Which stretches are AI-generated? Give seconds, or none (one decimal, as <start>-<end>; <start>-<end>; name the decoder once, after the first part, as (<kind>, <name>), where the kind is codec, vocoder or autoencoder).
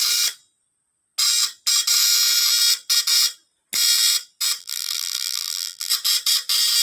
4.6-5.9 (vocoder, BigVGAN v2)